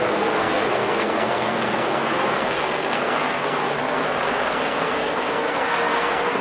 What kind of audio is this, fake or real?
fake